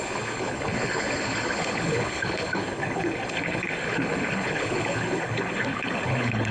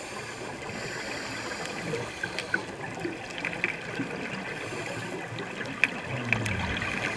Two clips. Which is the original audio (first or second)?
second